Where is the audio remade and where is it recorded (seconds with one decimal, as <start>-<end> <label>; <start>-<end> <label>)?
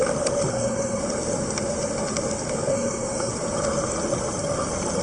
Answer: 0.0-0.5 recorded; 0.5-1.0 remade; 1.0-2.7 recorded; 2.7-3.3 remade; 3.3-5.0 recorded